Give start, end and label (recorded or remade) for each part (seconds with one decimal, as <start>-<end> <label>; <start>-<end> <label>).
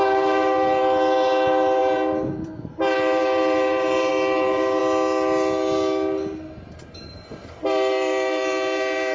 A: 0.0-4.8 remade; 4.8-6.7 recorded; 6.7-9.1 remade